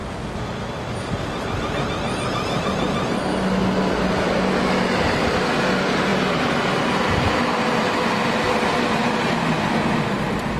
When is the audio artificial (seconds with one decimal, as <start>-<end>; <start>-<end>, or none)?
none